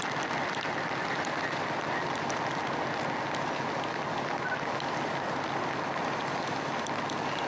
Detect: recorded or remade recorded